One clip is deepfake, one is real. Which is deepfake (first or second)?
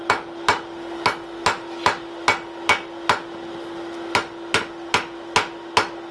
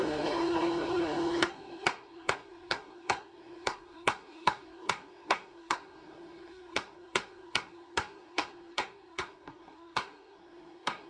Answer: second